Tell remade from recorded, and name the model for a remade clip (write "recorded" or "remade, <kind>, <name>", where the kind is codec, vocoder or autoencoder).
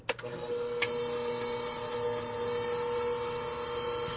recorded